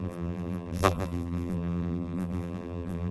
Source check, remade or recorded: remade